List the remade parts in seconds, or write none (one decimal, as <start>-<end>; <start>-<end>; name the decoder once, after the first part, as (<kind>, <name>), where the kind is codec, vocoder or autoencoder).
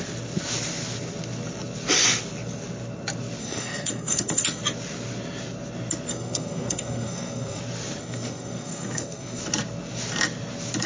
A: 3.4-4.6 (codec, SNAC); 6.1-7.6; 8.0-9.4